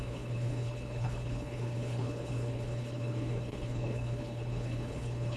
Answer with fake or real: fake